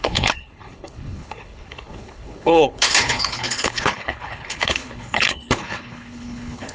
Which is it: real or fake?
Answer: fake